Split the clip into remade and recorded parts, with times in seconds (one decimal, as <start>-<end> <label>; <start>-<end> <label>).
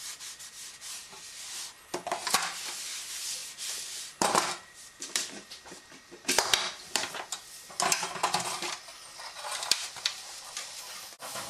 0.0-2.2 recorded; 2.2-2.8 remade; 2.8-3.4 recorded; 3.4-5.6 remade; 5.6-11.5 recorded